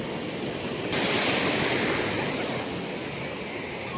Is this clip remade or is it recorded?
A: recorded